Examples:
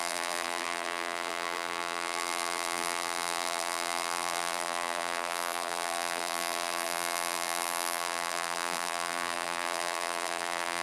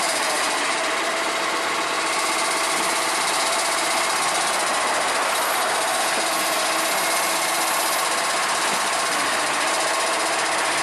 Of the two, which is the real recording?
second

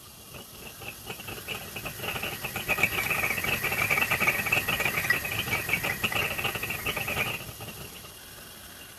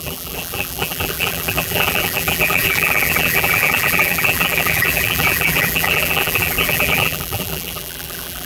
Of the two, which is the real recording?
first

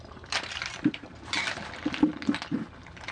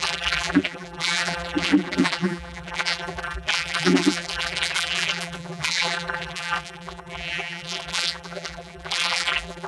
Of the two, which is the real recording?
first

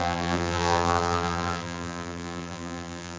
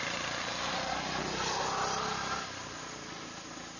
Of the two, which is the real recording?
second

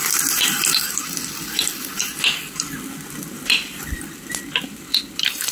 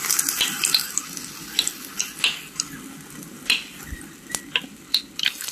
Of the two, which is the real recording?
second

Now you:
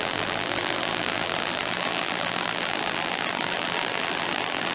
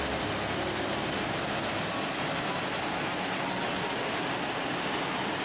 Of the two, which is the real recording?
second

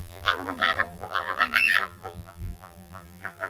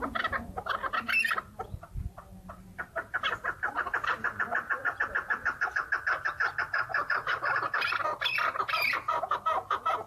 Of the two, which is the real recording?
second